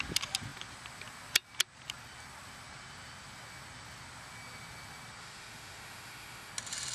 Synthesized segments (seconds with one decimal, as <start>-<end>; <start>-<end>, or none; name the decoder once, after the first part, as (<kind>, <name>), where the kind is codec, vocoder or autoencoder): 5.2-6.5 (autoencoder, DAC-VAE)